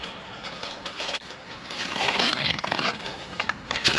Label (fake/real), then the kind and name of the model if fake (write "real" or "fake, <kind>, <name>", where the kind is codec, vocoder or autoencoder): fake, codec, SNAC